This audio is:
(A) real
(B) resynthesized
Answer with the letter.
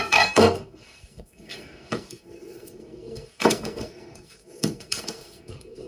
B